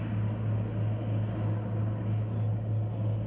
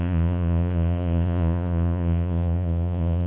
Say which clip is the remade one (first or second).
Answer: second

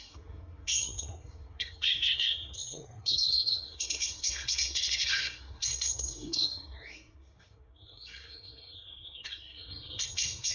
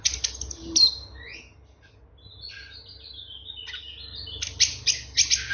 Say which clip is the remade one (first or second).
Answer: first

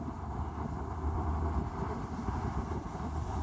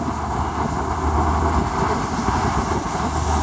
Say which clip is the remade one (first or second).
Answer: first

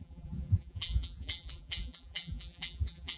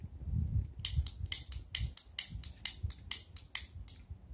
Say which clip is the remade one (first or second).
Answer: first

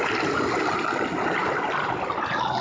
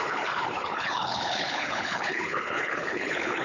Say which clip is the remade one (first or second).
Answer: second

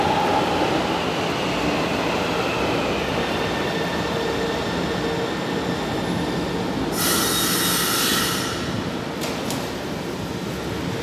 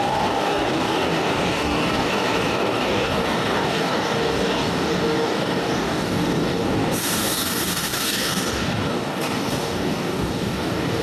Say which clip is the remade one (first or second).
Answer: second